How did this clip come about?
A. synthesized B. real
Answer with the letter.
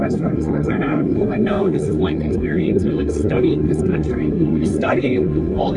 A